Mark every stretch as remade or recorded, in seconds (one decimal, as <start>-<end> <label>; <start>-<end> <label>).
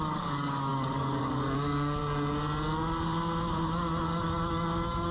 0.0-2.0 remade; 2.0-4.0 recorded; 4.0-5.1 remade